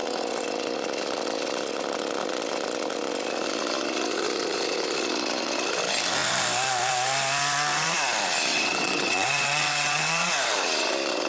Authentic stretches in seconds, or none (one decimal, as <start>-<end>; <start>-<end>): 0.0-8.5; 10.3-11.3